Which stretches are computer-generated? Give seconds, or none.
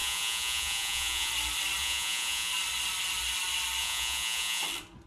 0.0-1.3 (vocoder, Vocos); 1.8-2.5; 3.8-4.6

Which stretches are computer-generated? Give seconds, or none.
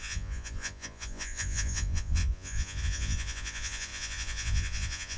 0.0-5.2 (vocoder, Vocos)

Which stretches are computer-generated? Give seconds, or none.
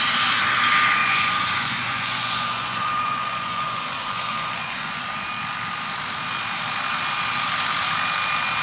1.0-5.0 (vocoder, Vocos)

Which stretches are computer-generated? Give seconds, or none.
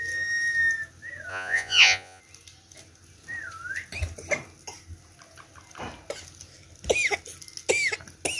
1.3-2.2 (vocoder, Vocos)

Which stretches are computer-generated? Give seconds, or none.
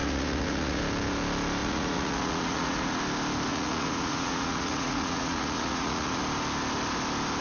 0.0-0.8 (vocoder, Vocos); 1.6-3.0; 3.5-6.2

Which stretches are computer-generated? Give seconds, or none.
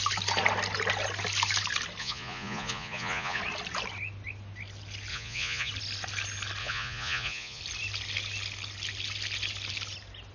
2.0-3.4 (vocoder, Vocos); 5.1-5.7; 6.6-7.6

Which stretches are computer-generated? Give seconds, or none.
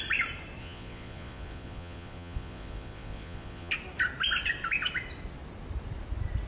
0.6-3.7 (vocoder, Vocos)